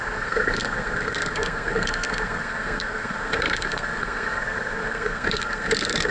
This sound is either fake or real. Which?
fake